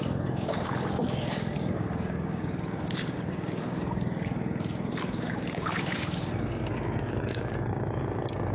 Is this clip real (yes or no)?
no